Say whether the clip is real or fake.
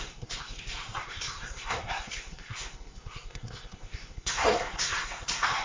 fake